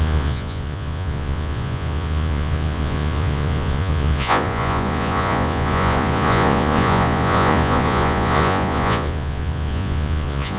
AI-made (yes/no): yes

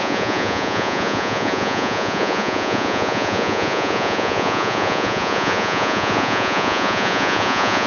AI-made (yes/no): yes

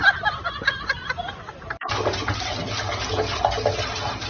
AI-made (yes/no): no